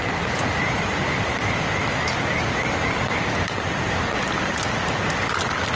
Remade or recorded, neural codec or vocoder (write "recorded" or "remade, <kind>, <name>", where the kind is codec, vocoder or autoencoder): recorded